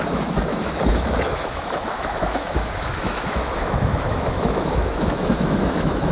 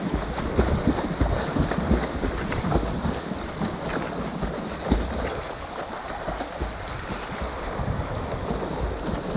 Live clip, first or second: second